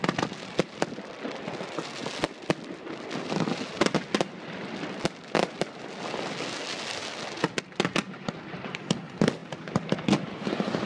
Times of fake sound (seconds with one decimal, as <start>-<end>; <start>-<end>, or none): none